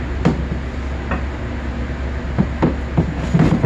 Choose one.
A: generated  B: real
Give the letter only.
B